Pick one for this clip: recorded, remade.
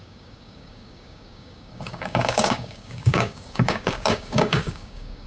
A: remade